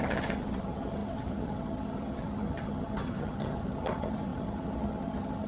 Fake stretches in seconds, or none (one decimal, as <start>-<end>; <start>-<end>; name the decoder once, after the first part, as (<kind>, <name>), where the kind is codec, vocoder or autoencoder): 0.0-5.5 (vocoder, HiFi-GAN)